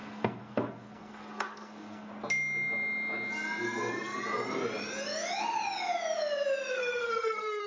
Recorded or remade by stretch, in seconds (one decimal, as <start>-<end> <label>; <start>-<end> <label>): 0.0-2.1 remade; 2.1-6.7 recorded; 6.7-7.7 remade